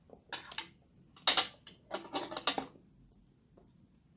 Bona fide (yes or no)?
yes